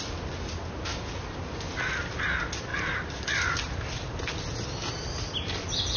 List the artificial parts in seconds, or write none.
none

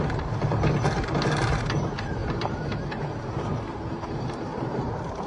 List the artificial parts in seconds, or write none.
0.0-5.3 (vocoder, BigVGAN v2)

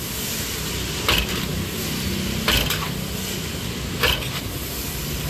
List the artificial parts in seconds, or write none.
none

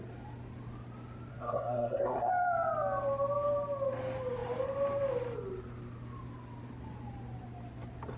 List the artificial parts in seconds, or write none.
1.3-2.3 (codec, SNAC)

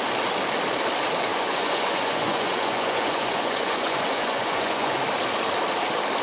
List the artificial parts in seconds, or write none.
1.3-5.0 (vocoder, Vocos)

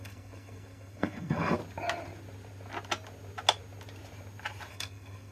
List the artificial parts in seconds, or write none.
0.0-1.6 (codec, SNAC); 4.7-5.3

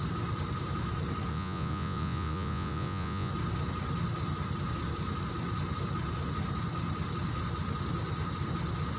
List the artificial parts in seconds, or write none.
1.3-3.3 (vocoder, Vocos)